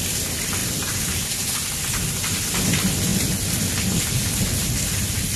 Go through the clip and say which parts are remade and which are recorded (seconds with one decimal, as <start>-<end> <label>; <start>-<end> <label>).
0.0-0.6 recorded; 0.6-1.3 remade; 1.3-3.1 recorded; 3.1-4.0 remade; 4.0-5.4 recorded